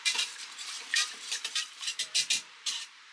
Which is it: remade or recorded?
remade